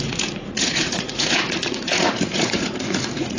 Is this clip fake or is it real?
fake